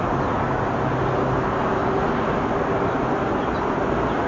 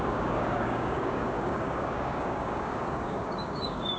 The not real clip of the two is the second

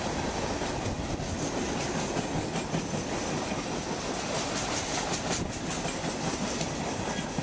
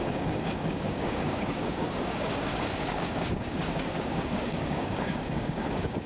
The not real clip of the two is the second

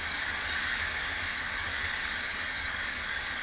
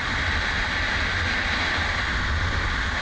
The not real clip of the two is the first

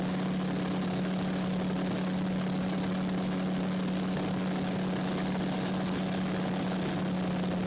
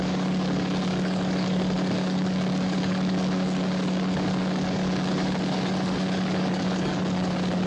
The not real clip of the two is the second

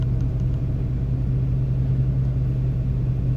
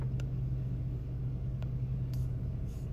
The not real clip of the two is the second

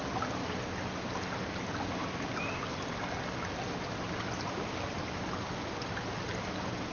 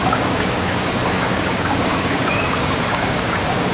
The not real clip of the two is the second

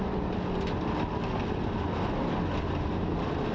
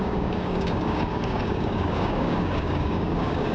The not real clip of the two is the second